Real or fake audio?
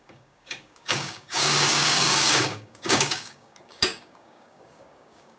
fake